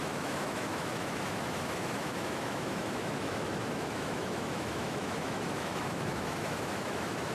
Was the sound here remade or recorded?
remade